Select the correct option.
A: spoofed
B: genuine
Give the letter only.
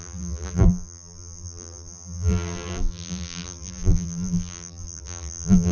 A